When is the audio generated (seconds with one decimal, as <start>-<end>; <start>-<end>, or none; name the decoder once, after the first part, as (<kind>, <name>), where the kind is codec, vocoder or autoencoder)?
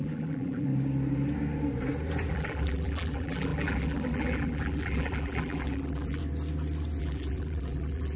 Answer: 0.0-0.7 (vocoder, BigVGAN v2); 2.3-6.2; 7.0-8.2